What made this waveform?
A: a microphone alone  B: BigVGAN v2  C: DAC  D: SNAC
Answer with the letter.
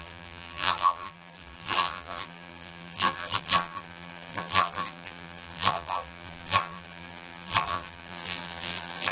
B